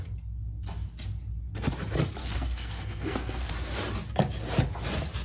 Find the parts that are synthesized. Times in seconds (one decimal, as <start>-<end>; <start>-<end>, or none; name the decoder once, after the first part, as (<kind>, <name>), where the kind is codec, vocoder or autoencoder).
2.2-3.5 (codec, SNAC)